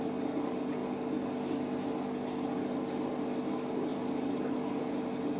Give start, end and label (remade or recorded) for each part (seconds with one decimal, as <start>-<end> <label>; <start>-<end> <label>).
0.0-5.4 recorded